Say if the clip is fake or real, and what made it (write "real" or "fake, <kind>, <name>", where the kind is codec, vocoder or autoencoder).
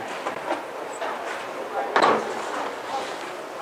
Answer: real